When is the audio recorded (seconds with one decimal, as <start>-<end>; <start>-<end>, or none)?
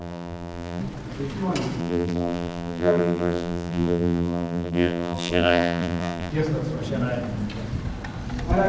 0.8-1.8; 6.3-8.7